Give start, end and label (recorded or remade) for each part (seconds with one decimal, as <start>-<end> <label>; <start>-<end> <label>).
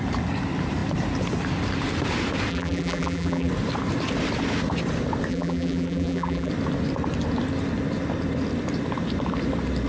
0.0-2.5 recorded; 2.5-3.5 remade; 3.5-5.3 recorded; 5.3-6.5 remade; 6.5-9.9 recorded